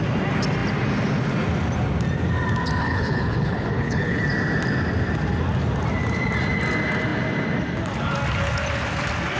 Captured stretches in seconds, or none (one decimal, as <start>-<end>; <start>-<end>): 0.0-2.8; 4.2-9.4